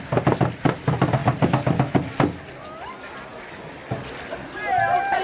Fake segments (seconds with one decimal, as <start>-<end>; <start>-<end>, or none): none